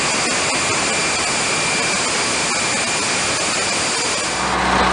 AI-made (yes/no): no